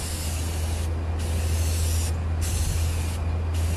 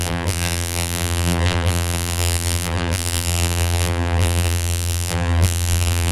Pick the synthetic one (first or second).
second